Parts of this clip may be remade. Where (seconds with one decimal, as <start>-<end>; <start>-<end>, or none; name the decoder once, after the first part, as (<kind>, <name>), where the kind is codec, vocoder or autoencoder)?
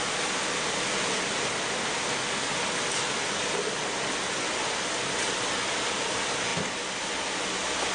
none